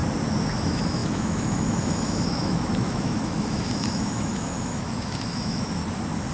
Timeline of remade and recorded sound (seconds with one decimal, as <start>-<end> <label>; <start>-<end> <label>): 0.0-0.6 recorded; 0.6-5.8 remade; 5.8-6.3 recorded